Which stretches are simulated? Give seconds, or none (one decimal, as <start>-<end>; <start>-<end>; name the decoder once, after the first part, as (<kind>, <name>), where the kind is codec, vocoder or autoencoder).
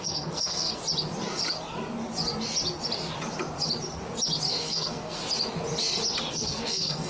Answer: 0.0-0.8 (codec, SNAC); 4.5-5.2; 6.3-7.1